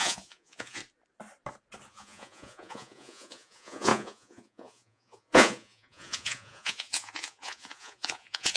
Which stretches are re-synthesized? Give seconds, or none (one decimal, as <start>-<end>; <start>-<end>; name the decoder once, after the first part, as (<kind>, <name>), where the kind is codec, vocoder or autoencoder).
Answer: 0.0-0.8 (vocoder, Vocos); 1.9-8.6